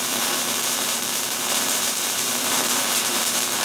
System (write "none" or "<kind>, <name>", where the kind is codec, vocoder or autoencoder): vocoder, BigVGAN v2